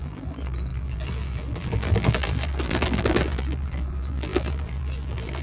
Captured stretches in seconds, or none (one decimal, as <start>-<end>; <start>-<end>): none